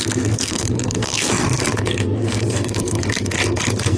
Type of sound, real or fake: fake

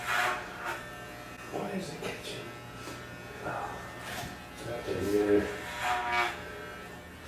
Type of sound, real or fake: real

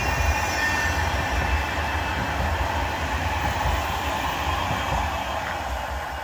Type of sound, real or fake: real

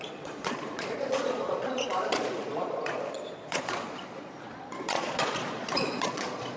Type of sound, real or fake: fake